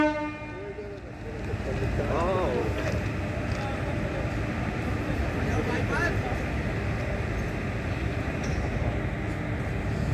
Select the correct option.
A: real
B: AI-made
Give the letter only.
A